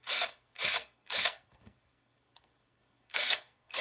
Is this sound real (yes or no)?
no